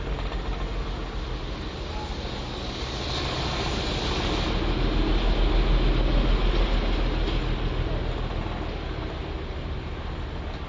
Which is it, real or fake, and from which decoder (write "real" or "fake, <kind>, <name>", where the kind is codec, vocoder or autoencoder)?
real